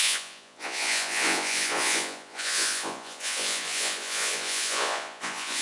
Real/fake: fake